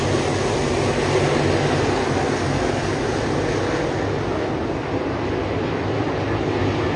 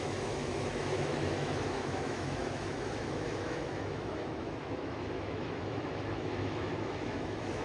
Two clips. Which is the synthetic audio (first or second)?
second